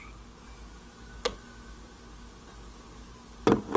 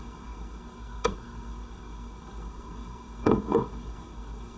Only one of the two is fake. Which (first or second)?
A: second